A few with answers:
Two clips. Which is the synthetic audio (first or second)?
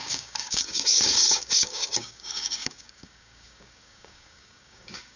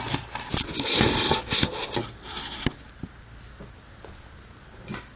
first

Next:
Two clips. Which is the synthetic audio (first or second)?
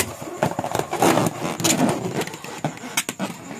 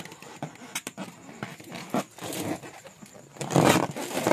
second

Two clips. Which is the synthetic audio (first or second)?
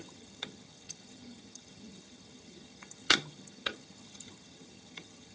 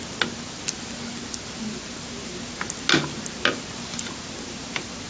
first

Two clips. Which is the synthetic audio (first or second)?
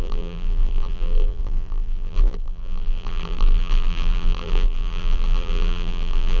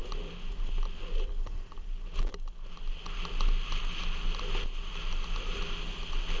first